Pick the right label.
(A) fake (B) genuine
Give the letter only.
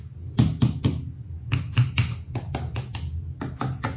B